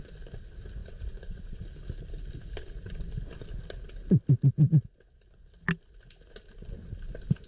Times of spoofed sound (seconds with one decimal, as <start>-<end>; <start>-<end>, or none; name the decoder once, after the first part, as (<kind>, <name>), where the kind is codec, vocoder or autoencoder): 0.8-1.6 (vocoder, Vocos)